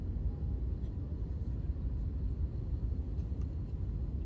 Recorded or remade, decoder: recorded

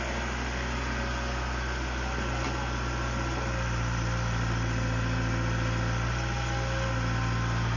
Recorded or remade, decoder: recorded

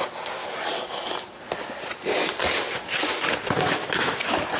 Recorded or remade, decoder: recorded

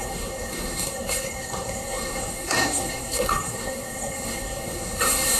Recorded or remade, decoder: remade, codec, SNAC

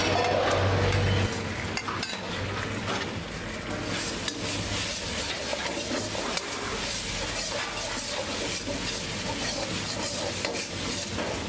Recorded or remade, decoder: recorded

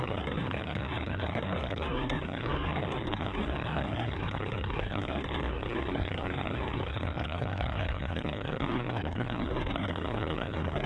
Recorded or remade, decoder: remade, codec, SNAC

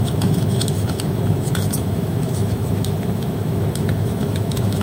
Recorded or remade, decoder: remade, autoencoder, DAC-VAE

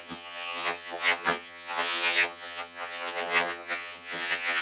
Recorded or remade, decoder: remade, vocoder, HiFi-GAN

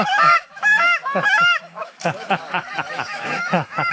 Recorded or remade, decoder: remade, autoencoder, DAC-VAE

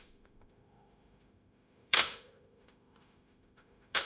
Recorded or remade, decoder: remade, autoencoder, DAC-VAE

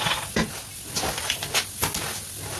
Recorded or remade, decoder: recorded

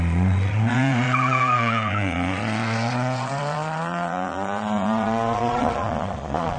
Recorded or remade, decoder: remade, vocoder, Vocos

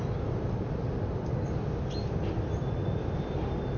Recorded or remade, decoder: recorded